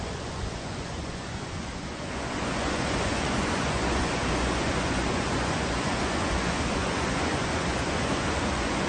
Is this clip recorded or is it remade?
remade